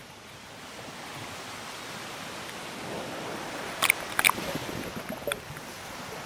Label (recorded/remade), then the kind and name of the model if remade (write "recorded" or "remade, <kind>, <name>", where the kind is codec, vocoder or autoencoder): recorded